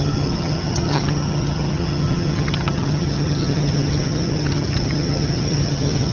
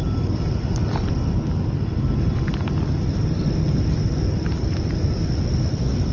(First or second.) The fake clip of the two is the first